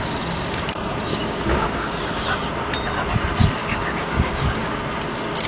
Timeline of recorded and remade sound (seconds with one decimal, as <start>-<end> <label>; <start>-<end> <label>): 0.0-1.1 recorded; 1.1-2.5 remade; 2.5-3.6 recorded; 3.6-4.8 remade; 4.8-5.5 recorded